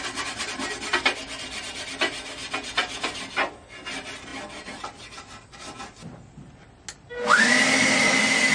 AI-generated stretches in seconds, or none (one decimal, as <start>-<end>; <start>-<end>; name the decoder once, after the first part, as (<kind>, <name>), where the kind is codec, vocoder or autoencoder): none